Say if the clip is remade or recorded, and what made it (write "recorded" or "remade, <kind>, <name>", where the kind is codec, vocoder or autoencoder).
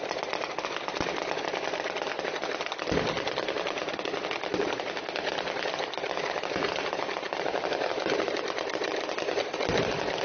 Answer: recorded